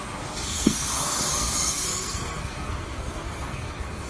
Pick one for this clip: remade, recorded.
remade